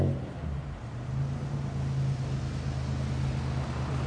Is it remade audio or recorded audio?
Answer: recorded